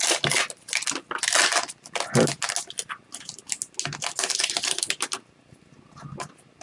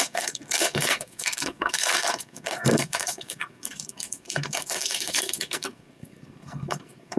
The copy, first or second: second